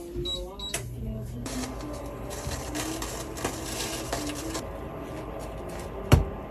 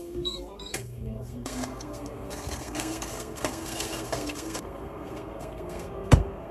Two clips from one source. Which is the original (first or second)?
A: first